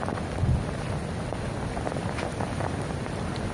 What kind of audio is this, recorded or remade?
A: recorded